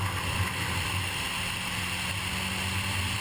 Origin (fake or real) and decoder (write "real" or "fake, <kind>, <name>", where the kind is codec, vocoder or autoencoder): real